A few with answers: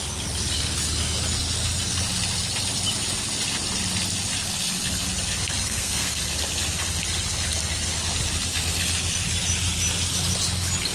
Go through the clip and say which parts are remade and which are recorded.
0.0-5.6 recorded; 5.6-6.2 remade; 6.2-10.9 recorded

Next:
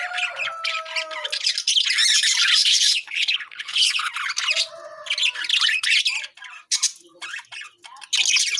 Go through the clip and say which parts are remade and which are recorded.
0.0-2.6 recorded; 2.6-4.1 remade; 4.1-8.6 recorded

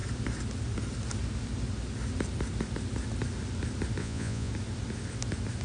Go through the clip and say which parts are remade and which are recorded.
0.0-4.0 recorded; 4.0-4.5 remade; 4.5-5.6 recorded